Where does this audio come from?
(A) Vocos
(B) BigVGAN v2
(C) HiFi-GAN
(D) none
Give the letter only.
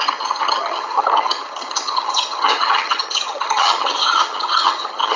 C